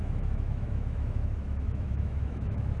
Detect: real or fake fake